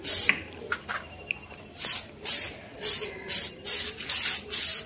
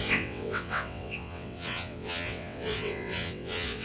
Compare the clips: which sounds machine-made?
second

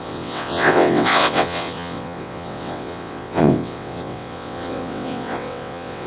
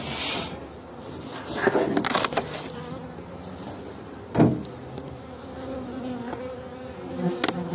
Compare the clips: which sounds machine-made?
first